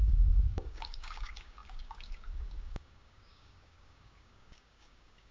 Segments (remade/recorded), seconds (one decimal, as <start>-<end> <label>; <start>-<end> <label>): 0.0-5.3 remade